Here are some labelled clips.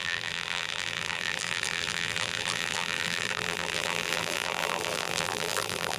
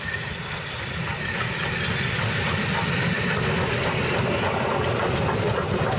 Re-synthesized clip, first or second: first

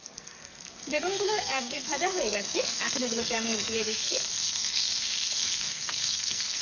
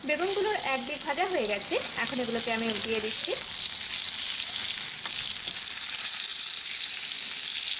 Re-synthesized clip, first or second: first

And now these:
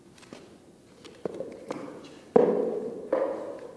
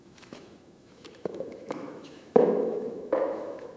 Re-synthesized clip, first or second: second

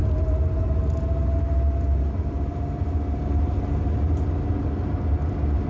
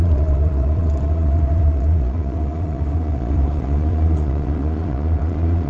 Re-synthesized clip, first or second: second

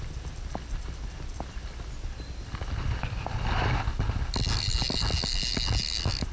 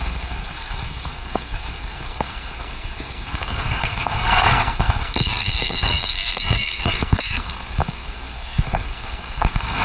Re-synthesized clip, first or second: second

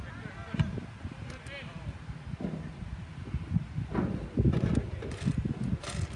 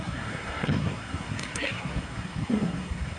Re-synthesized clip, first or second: second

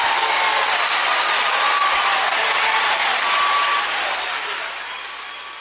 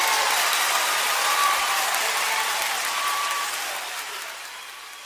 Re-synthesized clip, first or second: second